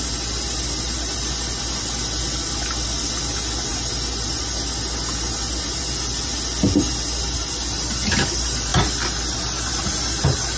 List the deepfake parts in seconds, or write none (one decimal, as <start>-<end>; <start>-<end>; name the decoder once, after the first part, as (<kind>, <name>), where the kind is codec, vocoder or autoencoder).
none